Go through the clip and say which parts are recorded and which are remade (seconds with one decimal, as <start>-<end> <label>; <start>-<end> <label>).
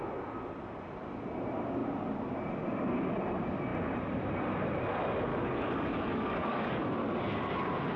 0.0-5.3 recorded; 5.3-6.8 remade; 6.8-8.0 recorded